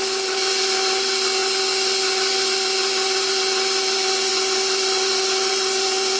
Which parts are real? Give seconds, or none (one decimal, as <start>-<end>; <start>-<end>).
0.0-6.2

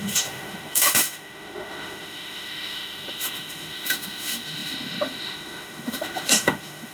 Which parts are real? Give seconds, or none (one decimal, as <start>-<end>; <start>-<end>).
none

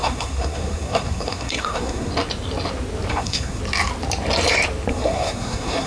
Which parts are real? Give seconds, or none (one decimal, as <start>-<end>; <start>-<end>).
2.1-3.1; 3.6-4.9